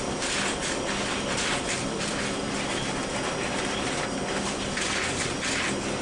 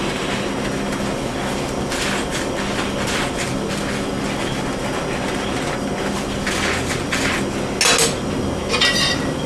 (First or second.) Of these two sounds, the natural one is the second